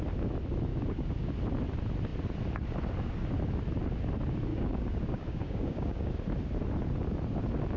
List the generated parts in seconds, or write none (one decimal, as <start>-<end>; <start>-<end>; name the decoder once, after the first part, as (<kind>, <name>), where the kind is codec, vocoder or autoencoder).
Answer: 0.7-1.3 (codec, DAC); 4.5-6.1